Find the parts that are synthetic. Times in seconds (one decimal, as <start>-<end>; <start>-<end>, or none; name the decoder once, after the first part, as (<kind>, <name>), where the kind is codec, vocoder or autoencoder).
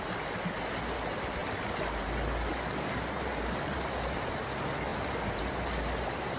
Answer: none